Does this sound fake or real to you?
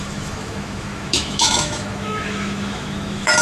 fake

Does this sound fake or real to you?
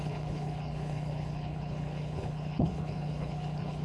fake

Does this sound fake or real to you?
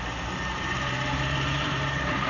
fake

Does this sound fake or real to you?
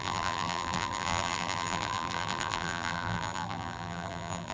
fake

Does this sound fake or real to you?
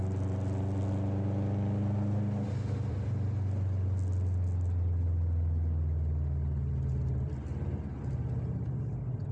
real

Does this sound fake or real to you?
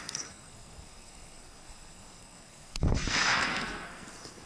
fake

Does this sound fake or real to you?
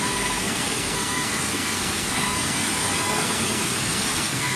fake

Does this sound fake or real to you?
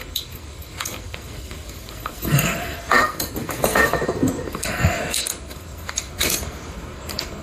fake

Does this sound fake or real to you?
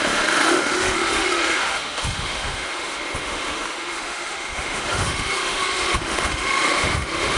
fake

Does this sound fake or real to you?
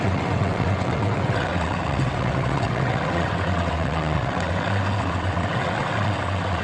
fake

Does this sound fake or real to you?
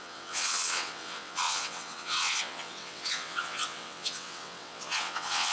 fake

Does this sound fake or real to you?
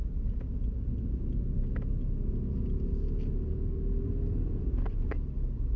real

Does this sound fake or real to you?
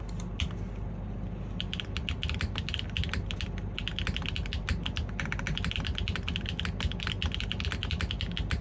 real